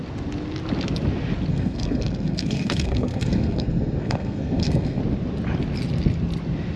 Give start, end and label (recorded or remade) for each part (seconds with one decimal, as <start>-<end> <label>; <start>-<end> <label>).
0.0-1.5 recorded; 1.5-5.0 remade; 5.0-6.8 recorded

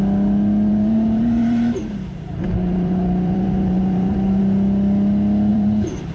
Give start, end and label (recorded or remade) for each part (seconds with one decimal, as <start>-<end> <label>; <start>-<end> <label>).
0.0-0.7 recorded; 0.7-4.4 remade; 4.4-5.5 recorded; 5.5-6.1 remade

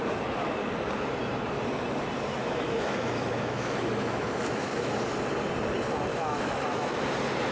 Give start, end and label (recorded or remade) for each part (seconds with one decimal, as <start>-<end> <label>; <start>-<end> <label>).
0.0-2.4 recorded; 2.4-4.9 remade; 4.9-6.1 recorded; 6.1-7.0 remade; 7.0-7.5 recorded

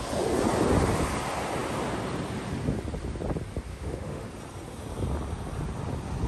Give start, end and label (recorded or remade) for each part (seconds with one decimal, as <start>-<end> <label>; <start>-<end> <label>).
0.0-3.7 recorded; 3.7-4.3 remade; 4.3-6.3 recorded

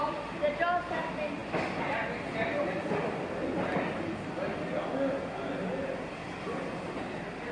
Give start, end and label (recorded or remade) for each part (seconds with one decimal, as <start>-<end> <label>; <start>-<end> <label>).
0.0-7.5 recorded

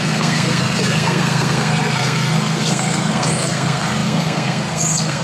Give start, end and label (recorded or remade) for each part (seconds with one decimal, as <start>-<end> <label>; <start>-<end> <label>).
0.0-5.2 remade

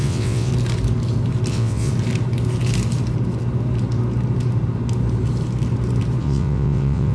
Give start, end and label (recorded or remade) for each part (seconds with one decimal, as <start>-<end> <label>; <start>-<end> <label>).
0.0-0.5 remade; 0.5-1.5 recorded; 1.5-1.9 remade; 1.9-6.2 recorded; 6.2-7.1 remade

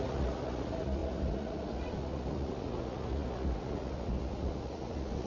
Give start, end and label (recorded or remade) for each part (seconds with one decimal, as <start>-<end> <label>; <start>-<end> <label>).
0.0-5.3 remade